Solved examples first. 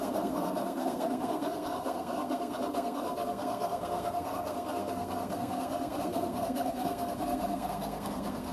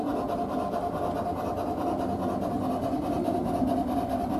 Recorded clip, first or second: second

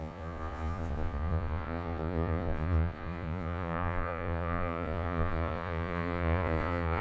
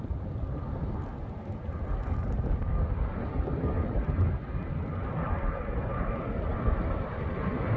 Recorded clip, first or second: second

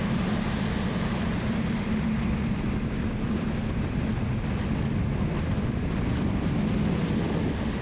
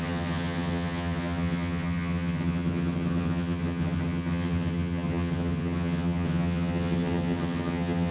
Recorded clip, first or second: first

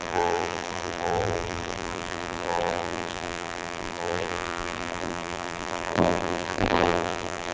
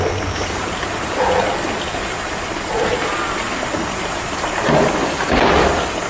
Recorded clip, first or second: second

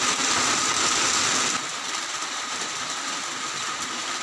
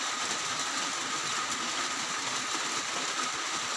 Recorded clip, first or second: second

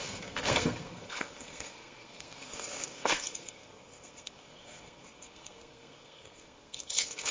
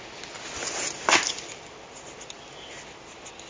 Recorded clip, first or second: second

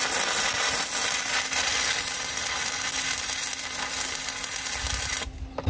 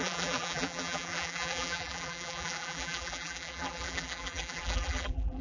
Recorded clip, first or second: first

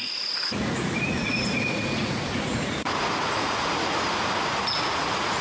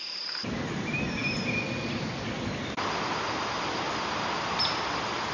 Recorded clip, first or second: second